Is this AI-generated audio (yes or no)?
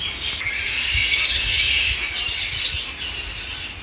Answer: no